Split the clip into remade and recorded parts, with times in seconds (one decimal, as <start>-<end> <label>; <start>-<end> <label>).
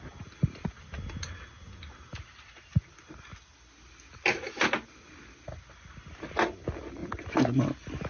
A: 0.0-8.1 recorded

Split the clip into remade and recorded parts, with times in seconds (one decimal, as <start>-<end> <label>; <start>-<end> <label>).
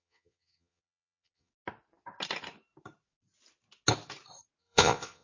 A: 0.0-1.5 remade; 1.5-4.6 recorded; 4.6-5.2 remade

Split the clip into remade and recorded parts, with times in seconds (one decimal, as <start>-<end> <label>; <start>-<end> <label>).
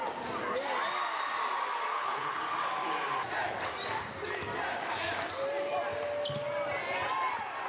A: 0.0-1.9 recorded; 1.9-2.4 remade; 2.4-7.7 recorded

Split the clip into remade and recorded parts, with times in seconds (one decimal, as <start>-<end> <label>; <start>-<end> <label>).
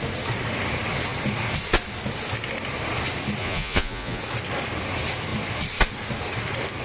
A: 0.0-3.4 recorded; 3.4-4.2 remade; 4.2-6.8 recorded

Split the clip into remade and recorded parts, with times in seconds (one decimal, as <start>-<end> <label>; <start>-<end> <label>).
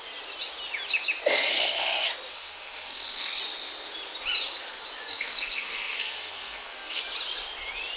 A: 0.0-2.3 recorded; 2.3-3.4 remade; 3.4-5.1 recorded; 5.1-7.0 remade; 7.0-8.0 recorded